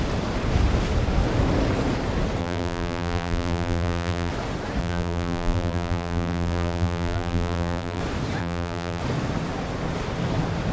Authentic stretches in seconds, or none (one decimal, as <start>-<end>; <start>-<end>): 0.0-2.4; 4.3-4.8; 8.0-8.4; 9.0-10.7